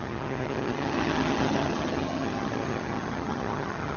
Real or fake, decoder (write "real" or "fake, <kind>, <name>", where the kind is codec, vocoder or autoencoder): fake, vocoder, HiFi-GAN